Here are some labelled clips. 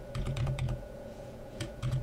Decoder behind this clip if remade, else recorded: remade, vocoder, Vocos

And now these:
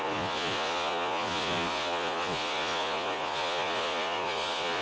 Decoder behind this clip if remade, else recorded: remade, vocoder, Vocos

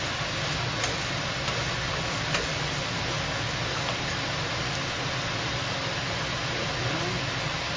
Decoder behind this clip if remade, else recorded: recorded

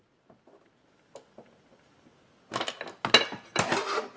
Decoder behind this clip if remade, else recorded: recorded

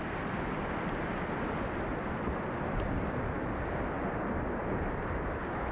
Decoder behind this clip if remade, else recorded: recorded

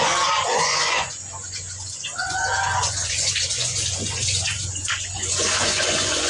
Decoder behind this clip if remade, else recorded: remade, vocoder, Vocos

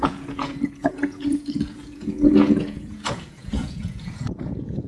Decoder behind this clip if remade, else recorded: remade, vocoder, Vocos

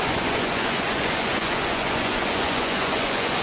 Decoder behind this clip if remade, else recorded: remade, vocoder, Vocos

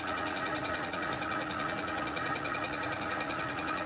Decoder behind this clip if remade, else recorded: remade, vocoder, Vocos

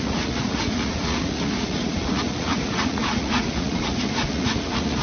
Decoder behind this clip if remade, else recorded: remade, vocoder, Vocos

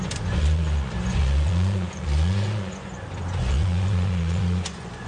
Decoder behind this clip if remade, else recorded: remade, vocoder, Vocos